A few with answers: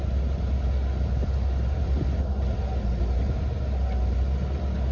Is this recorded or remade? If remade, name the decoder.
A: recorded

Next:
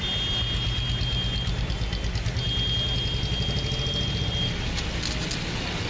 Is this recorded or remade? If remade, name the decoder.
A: recorded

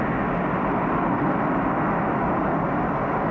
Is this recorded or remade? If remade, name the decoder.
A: recorded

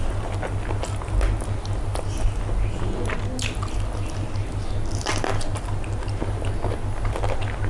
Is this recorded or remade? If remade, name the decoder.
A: recorded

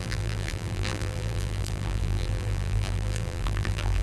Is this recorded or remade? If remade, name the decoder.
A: remade, vocoder, BigVGAN v2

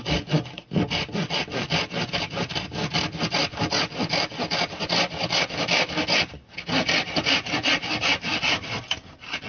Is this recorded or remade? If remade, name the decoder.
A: recorded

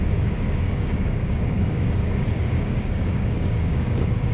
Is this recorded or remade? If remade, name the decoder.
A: remade, codec, DAC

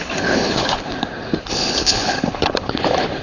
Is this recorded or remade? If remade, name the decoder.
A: remade, codec, HILCodec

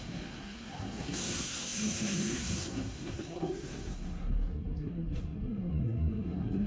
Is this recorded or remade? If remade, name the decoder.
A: remade, codec, SNAC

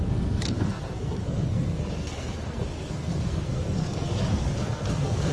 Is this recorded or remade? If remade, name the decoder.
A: remade, codec, SNAC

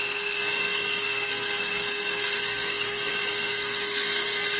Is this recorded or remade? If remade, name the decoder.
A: remade, codec, SNAC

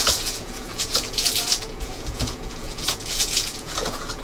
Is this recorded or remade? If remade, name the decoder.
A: remade, vocoder, Vocos